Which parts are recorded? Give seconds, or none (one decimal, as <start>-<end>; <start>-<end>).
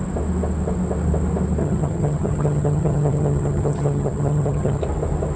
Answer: 0.0-1.6; 4.8-5.4